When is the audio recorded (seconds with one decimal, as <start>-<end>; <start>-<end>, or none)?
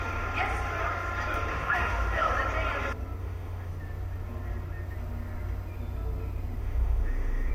0.0-1.5; 2.3-3.2; 3.7-6.6